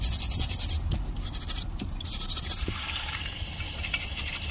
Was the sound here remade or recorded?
recorded